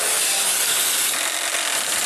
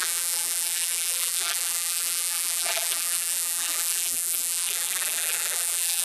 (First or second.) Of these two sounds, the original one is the first